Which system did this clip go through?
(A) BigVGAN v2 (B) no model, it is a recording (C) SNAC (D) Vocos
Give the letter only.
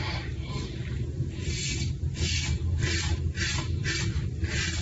B